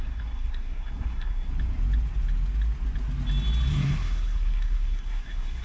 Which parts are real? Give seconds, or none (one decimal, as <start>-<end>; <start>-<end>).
1.5-3.7